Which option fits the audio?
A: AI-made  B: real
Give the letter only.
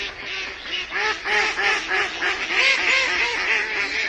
B